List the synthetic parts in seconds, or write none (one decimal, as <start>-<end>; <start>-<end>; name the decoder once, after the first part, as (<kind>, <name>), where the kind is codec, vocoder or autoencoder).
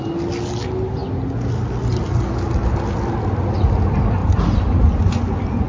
none